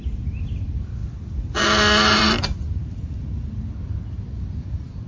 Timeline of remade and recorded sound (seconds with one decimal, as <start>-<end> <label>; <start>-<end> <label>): 0.0-5.1 recorded